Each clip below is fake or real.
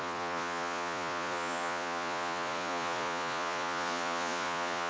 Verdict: fake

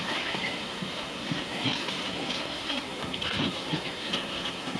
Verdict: fake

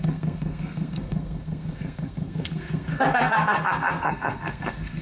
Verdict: fake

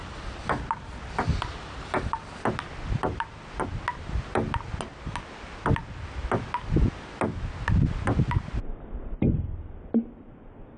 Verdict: real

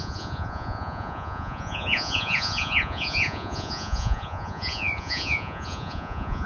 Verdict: fake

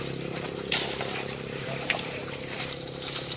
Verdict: fake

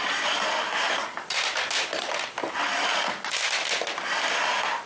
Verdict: real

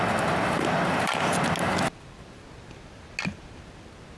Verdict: real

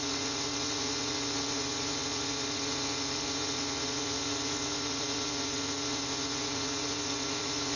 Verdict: fake